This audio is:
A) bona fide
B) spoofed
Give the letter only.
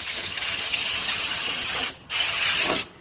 B